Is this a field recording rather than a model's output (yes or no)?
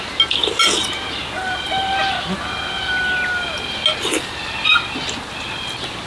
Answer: yes